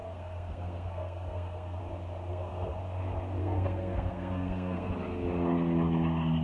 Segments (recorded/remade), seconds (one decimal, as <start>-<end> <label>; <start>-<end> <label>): 0.0-1.8 remade; 1.8-2.3 recorded; 2.3-2.8 remade; 2.8-3.4 recorded; 3.4-4.9 remade; 4.9-6.4 recorded